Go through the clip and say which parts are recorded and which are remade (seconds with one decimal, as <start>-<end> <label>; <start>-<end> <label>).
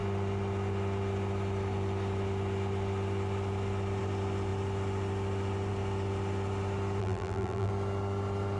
0.0-7.0 recorded; 7.0-7.7 remade; 7.7-8.6 recorded